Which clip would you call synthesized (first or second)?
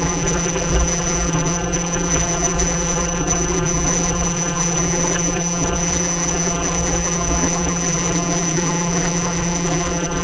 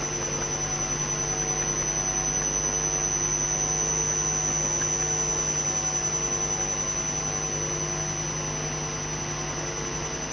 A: first